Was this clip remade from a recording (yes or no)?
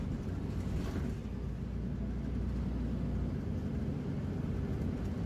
no